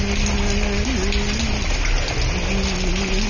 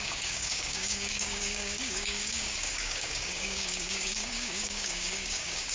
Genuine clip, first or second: first